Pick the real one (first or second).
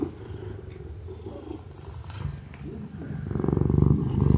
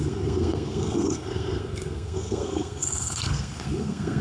first